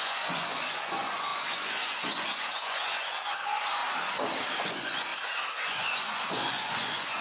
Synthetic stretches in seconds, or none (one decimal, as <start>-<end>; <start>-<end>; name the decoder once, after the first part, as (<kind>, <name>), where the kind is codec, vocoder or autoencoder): 0.0-3.8 (vocoder, Vocos); 4.6-5.1; 5.6-7.2